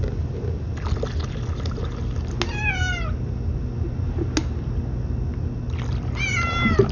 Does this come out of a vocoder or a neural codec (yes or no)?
no